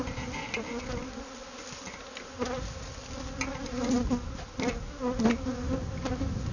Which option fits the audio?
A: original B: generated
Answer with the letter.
A